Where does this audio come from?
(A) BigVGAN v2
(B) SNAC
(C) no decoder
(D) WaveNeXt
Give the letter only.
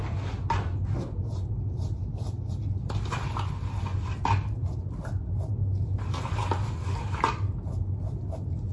C